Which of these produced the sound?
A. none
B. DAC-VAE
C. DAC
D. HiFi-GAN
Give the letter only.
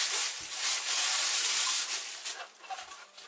A